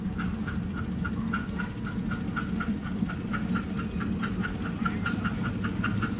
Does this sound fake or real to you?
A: real